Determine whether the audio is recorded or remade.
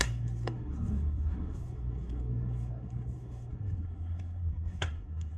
remade